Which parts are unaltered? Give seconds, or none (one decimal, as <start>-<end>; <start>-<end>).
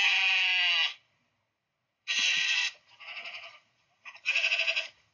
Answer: 0.0-1.8